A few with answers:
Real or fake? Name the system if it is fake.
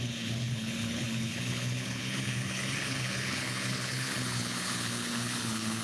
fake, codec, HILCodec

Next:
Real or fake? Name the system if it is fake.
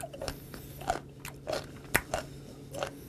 real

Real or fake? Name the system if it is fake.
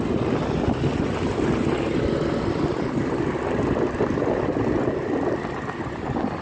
real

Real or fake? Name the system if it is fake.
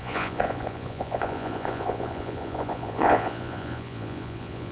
fake, vocoder, Vocos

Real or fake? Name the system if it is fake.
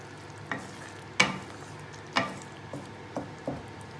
real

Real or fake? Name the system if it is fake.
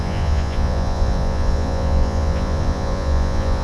fake, vocoder, Vocos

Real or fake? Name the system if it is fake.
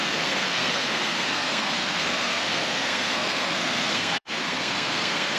fake, codec, SNAC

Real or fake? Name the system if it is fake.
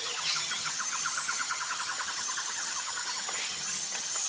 fake, vocoder, HiFi-GAN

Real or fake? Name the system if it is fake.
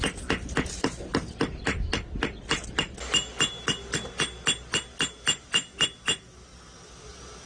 real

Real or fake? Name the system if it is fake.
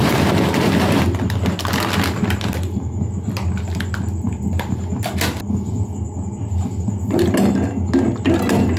real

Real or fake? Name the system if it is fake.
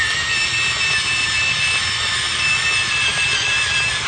real